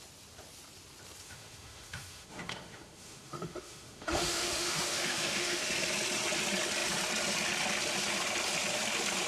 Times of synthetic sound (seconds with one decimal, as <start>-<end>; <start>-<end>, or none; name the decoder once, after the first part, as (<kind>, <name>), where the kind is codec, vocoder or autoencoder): 1.2-5.7 (autoencoder, DAC-VAE)